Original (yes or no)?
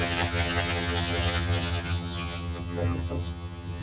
no